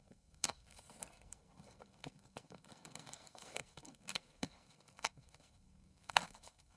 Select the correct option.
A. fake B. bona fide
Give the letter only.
A